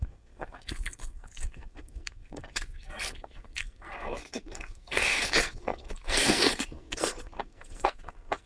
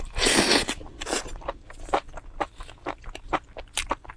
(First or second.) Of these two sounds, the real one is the second